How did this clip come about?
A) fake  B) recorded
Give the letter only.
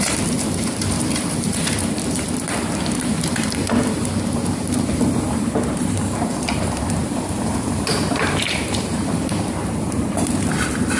A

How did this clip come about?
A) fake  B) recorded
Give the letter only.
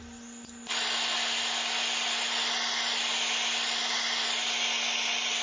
B